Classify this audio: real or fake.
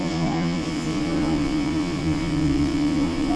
fake